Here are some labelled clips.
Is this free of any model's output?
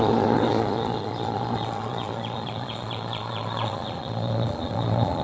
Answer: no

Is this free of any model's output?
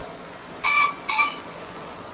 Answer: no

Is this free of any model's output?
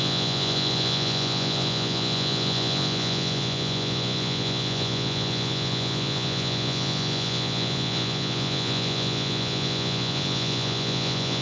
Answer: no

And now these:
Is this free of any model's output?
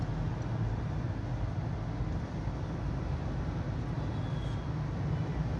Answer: yes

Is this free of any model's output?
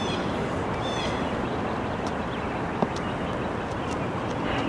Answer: yes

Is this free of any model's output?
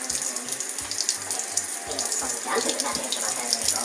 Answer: yes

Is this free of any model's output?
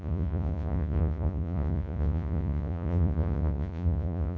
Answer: no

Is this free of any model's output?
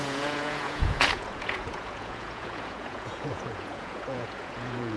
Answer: no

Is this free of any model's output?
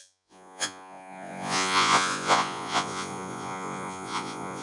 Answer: no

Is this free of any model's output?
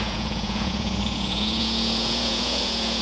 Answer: no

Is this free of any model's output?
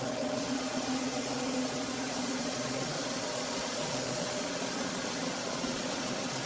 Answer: no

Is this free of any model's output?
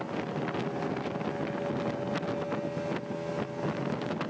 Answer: yes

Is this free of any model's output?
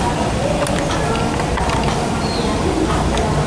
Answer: yes